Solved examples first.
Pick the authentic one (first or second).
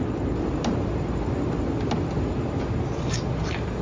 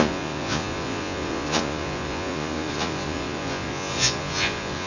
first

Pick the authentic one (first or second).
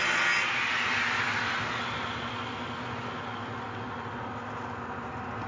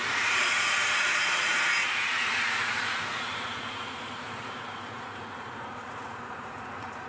first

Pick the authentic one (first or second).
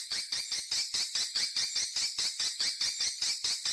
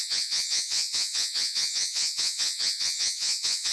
first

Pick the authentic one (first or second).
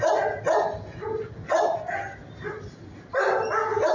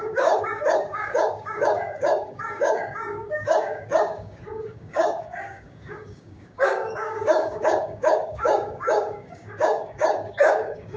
first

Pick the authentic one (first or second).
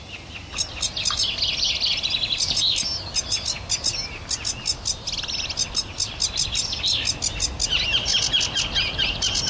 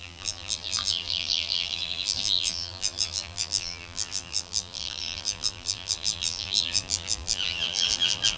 first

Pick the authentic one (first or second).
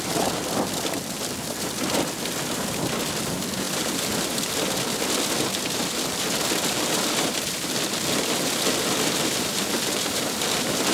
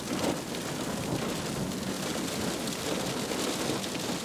second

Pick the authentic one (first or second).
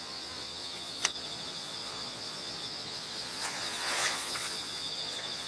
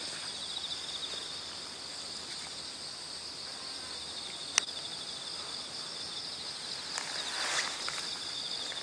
second